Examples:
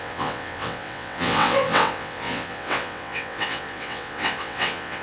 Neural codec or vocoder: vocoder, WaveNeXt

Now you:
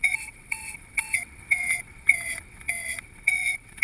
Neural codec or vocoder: vocoder, WaveNeXt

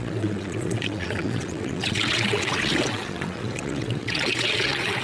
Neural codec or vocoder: vocoder, WaveNeXt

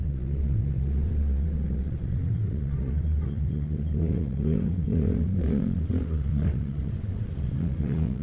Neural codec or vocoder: vocoder, WaveNeXt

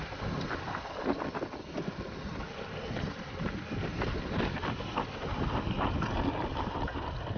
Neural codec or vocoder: none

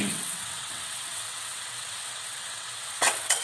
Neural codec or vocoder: vocoder, WaveNeXt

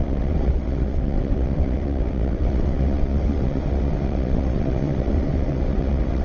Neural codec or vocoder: vocoder, WaveNeXt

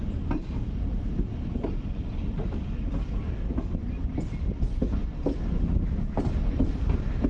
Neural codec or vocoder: none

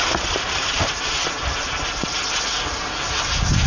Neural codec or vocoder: none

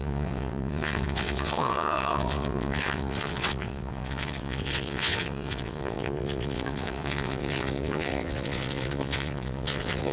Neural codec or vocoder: vocoder, WaveNeXt